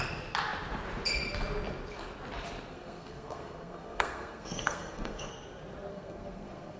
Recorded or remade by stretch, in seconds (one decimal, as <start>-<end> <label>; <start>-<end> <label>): 0.0-2.7 recorded; 2.7-5.3 remade; 5.3-5.9 recorded; 5.9-6.8 remade